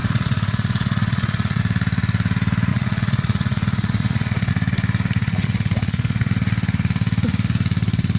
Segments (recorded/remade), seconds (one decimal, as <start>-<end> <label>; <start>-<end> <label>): 0.0-1.6 remade; 1.6-2.7 recorded; 2.7-4.5 remade; 4.5-5.2 recorded; 5.2-6.3 remade; 6.3-8.2 recorded